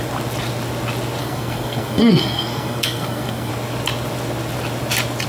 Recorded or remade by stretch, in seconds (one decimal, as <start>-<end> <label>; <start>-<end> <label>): 0.0-1.2 recorded; 1.2-3.5 remade; 3.5-5.3 recorded